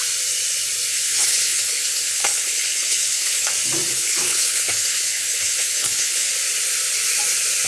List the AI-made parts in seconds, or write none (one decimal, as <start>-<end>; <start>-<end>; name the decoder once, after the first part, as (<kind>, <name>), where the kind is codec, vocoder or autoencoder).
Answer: 0.9-3.5 (codec, HILCodec); 3.9-6.3